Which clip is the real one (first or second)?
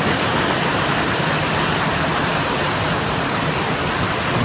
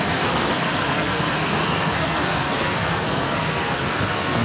first